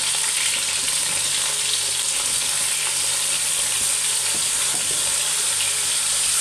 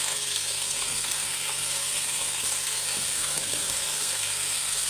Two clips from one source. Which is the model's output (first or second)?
second